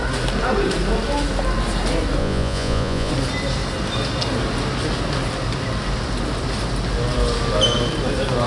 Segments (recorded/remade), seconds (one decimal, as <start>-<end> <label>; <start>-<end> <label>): 0.0-2.2 recorded; 2.2-3.1 remade; 3.1-8.5 recorded